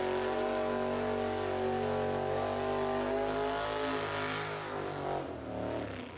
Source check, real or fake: real